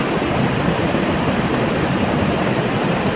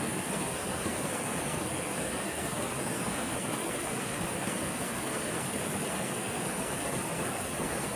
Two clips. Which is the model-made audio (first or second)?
second